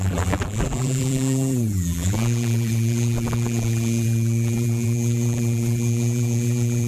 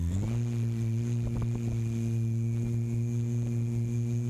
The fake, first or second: first